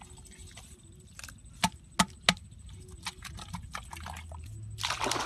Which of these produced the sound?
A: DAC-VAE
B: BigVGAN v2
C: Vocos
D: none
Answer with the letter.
D